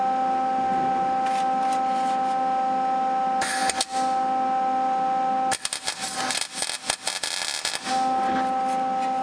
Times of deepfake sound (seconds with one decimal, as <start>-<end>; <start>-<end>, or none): none

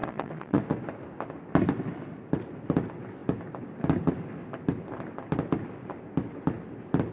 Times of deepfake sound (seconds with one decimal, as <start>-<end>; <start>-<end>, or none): 0.0-0.6

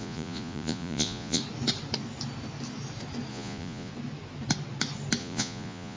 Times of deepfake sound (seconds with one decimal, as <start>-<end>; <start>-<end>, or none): 0.0-1.4; 3.3-3.9; 5.2-6.0

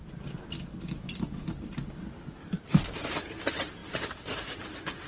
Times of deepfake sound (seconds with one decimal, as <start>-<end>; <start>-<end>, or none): none

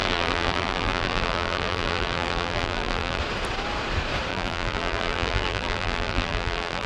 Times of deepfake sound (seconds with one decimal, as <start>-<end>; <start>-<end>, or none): 0.0-3.2; 4.3-6.9

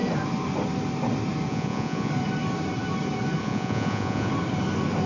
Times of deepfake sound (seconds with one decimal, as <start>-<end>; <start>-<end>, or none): 1.5-2.1; 3.4-4.3

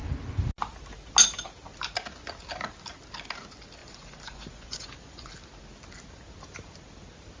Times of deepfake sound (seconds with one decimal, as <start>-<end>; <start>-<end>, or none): 3.8-5.3

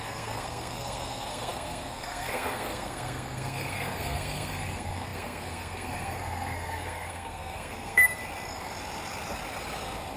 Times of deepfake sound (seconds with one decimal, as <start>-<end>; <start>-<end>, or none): 0.0-8.2